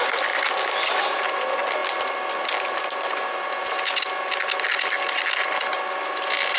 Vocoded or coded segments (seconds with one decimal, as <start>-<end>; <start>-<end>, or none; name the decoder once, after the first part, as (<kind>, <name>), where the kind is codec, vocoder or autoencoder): none